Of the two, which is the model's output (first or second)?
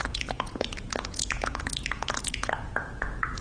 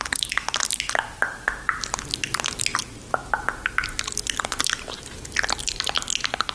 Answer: first